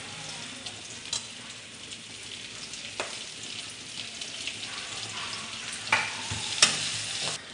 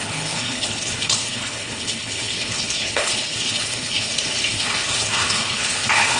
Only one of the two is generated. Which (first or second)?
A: second